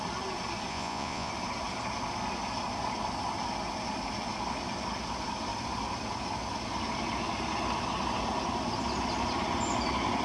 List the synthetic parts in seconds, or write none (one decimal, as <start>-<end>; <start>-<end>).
0.7-1.3